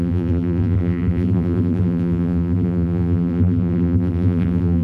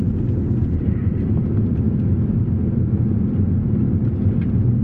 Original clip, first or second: second